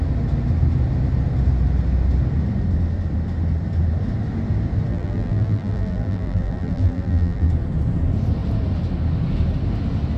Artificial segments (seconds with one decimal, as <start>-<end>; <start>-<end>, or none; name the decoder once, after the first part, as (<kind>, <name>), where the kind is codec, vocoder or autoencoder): 4.9-7.5 (vocoder, BigVGAN v2)